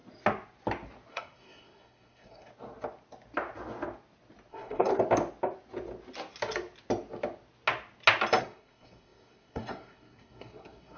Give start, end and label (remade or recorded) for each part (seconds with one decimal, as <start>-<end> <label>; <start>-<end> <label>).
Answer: 0.0-1.1 recorded; 1.1-2.5 remade; 2.5-4.5 recorded; 4.5-4.9 remade; 4.9-8.4 recorded; 8.4-11.0 remade